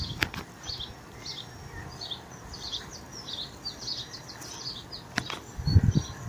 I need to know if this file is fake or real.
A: real